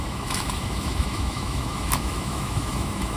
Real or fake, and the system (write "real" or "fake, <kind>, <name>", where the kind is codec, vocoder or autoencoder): fake, autoencoder, DAC-VAE